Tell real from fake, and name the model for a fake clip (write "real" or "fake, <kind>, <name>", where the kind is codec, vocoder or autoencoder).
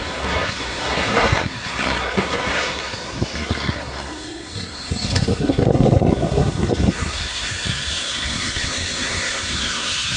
fake, codec, SNAC